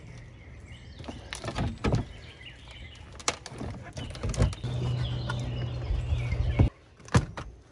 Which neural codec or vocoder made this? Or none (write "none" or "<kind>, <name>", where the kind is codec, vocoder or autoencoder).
none